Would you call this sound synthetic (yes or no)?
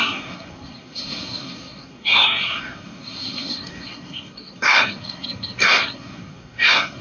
yes